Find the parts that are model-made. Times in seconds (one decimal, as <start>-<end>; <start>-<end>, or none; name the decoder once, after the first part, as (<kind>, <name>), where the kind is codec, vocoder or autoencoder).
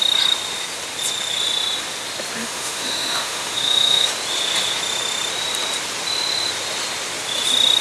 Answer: 2.4-4.1 (autoencoder, DAC-VAE)